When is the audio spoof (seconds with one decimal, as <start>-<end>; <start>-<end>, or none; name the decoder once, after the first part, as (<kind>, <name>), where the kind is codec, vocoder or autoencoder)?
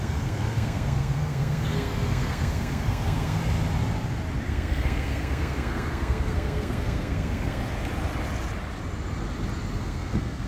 0.0-3.4 (codec, SNAC); 4.4-7.6; 9.8-10.5